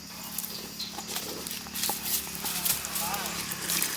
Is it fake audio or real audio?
real